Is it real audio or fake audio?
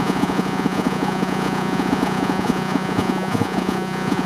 fake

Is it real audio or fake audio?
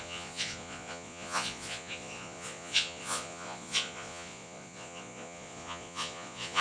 fake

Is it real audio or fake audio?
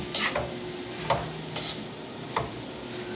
real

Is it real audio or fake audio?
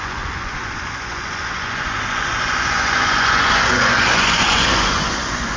fake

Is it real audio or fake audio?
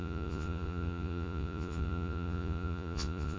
fake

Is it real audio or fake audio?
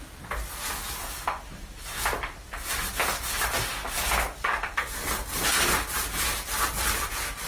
real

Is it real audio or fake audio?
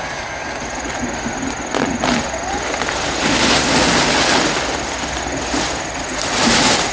real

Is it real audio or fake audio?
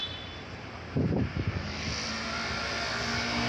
real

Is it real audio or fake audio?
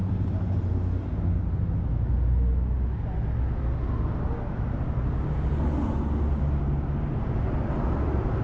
real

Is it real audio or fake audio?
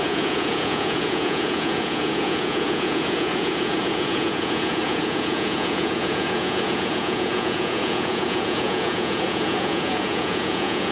fake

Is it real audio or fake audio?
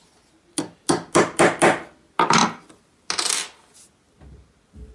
real